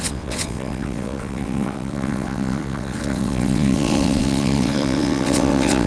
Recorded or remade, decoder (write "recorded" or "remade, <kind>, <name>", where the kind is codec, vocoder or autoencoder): remade, vocoder, WaveNeXt